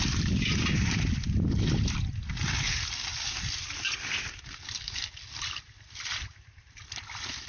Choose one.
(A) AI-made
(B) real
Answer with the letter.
B